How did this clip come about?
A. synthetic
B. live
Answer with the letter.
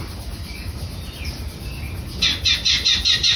B